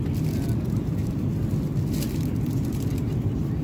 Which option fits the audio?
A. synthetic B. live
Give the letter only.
B